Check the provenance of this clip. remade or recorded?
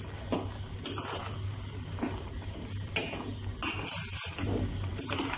recorded